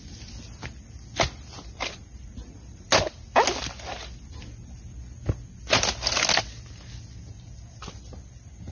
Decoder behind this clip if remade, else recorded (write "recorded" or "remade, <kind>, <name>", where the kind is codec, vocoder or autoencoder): recorded